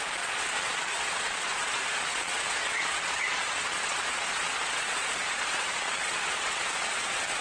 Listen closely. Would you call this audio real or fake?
fake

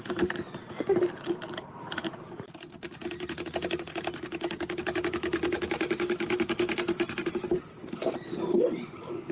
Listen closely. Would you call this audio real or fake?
fake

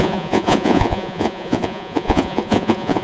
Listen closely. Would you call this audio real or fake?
fake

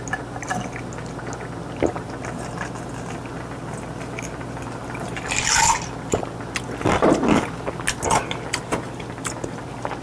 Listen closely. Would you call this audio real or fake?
real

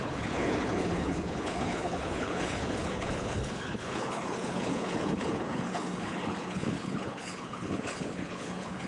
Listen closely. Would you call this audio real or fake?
fake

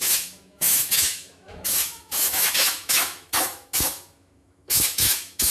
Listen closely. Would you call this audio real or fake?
fake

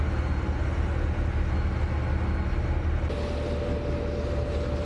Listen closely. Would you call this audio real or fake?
real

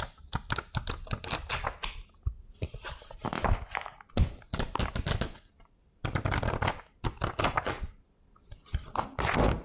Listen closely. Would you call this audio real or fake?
real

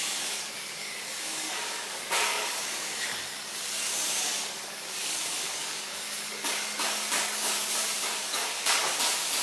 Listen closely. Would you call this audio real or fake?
fake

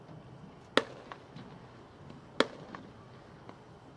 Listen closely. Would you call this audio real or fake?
real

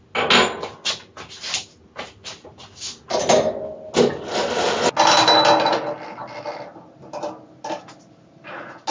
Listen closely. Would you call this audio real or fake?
real